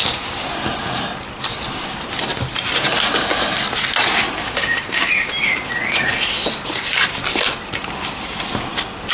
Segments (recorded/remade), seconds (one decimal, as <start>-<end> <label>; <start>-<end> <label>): 0.0-4.4 recorded; 4.4-5.3 remade; 5.3-9.1 recorded